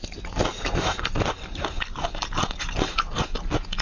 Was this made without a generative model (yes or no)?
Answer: yes